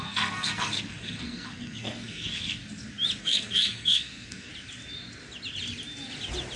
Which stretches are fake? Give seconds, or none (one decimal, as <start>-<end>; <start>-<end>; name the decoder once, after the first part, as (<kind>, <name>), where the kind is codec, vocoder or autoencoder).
0.0-2.6 (codec, SNAC); 3.2-4.5